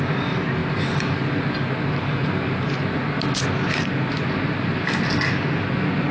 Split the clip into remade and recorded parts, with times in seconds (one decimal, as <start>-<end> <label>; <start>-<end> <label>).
0.0-6.1 recorded